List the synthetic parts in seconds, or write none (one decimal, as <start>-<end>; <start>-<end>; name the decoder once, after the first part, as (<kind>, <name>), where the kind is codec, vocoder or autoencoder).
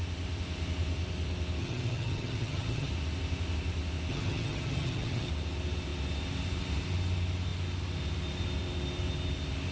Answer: 1.6-2.9 (vocoder, HiFi-GAN); 4.1-5.3